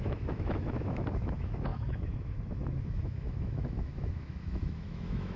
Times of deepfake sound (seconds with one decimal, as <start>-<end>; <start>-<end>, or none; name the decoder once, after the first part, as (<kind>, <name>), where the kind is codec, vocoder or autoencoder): 0.0-5.4 (autoencoder, DAC-VAE)